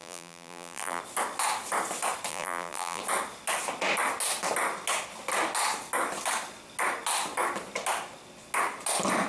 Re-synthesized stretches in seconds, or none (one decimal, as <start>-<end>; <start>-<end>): 0.0-1.0; 2.3-3.0